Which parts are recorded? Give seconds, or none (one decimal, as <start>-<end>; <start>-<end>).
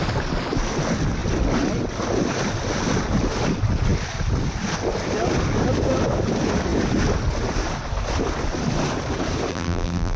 0.0-9.5